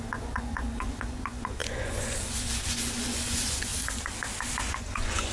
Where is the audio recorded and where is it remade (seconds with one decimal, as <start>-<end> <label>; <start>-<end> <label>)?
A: 0.0-3.7 remade; 3.7-4.7 recorded; 4.7-5.3 remade